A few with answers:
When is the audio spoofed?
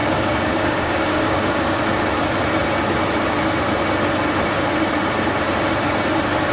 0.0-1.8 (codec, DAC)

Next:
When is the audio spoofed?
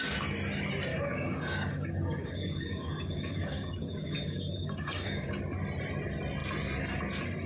0.9-5.4 (codec, DAC)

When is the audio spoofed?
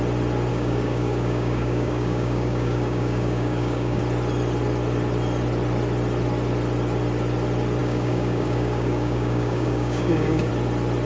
0.5-4.0 (codec, DAC); 7.8-10.5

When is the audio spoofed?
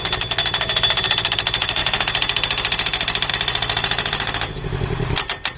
none